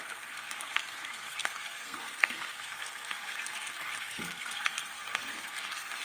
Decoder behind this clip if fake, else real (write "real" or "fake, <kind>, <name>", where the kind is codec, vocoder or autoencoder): fake, codec, SNAC